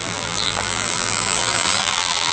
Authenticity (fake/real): fake